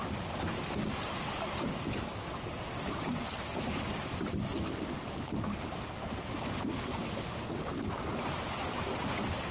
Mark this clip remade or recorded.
recorded